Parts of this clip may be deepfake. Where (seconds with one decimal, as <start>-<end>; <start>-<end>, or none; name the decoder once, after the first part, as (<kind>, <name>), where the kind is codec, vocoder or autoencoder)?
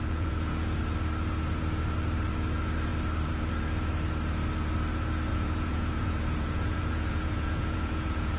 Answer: 0.0-0.8 (vocoder, Vocos); 5.3-8.4